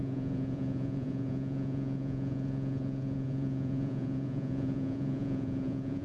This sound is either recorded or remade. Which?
remade